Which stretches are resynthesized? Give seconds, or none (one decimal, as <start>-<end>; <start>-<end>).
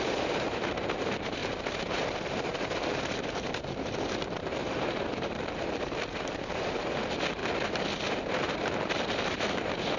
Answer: 0.0-7.4; 8.1-10.0